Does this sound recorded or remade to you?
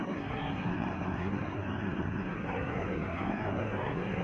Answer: remade